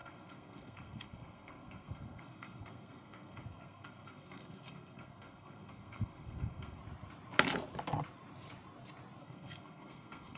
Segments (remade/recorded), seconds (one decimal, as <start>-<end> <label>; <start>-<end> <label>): 0.0-6.8 remade; 6.8-9.2 recorded; 9.2-10.4 remade